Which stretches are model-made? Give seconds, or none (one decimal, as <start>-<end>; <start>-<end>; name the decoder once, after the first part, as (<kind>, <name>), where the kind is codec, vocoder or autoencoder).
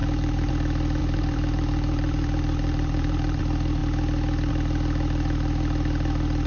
0.0-0.5 (vocoder, BigVGAN v2); 1.0-3.4